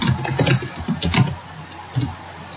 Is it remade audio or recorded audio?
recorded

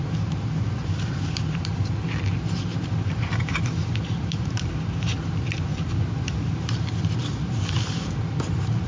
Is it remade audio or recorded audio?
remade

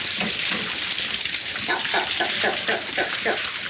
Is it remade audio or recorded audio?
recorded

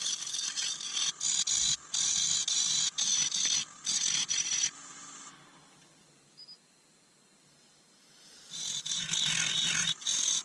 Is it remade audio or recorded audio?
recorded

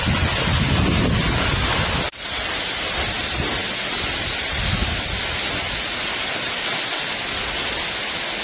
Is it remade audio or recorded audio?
recorded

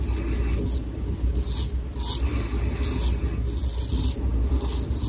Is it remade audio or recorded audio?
recorded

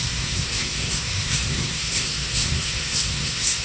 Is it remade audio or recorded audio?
remade